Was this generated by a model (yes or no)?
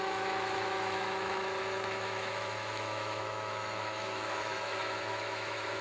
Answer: yes